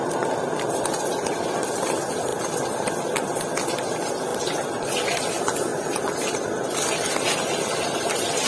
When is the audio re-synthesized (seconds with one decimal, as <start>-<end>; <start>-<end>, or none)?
4.3-4.9; 5.7-8.1